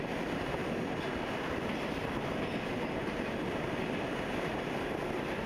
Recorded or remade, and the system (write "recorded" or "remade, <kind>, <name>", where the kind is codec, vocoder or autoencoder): recorded